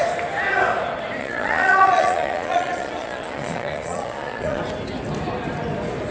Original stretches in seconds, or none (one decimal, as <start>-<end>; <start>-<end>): 0.0-1.2; 4.6-6.1